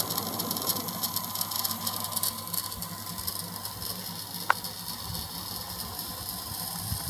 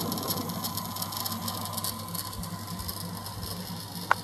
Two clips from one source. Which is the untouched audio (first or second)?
second